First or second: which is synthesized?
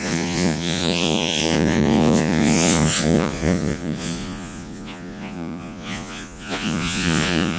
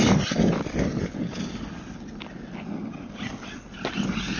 first